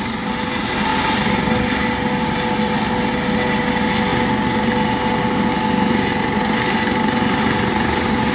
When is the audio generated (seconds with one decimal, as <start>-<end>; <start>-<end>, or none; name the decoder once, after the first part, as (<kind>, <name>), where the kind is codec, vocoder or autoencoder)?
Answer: none